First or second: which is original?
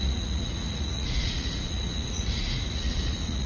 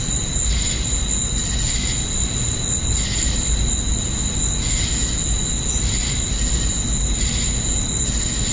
second